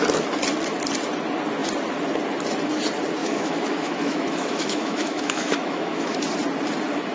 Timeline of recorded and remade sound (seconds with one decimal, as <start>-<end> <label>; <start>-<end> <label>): 0.0-3.2 recorded; 3.2-6.2 remade; 6.2-7.1 recorded